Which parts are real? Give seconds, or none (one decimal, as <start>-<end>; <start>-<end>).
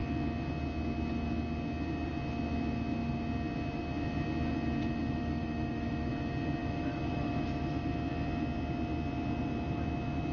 0.0-5.0; 6.1-6.6; 7.9-10.3